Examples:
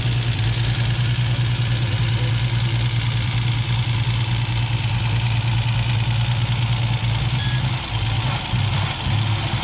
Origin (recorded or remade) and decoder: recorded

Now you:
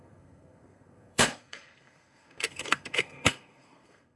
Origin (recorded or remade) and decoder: remade, codec, SNAC